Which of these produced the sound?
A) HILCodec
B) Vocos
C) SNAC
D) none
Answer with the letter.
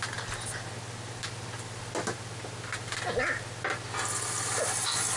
D